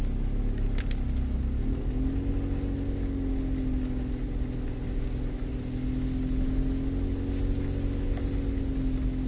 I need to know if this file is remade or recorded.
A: recorded